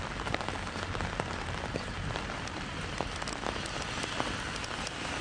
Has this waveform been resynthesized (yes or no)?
no